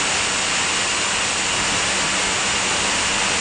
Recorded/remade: recorded